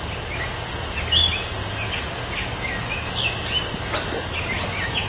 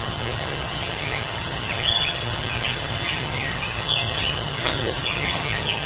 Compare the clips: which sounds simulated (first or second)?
second